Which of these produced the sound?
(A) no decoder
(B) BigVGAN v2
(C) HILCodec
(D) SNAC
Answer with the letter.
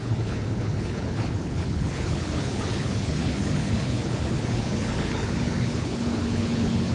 C